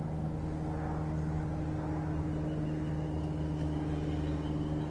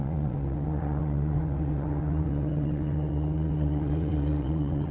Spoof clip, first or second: second